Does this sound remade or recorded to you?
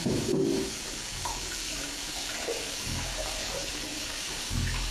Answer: remade